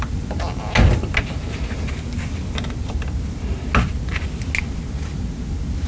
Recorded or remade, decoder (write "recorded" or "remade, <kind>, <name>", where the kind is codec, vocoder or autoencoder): recorded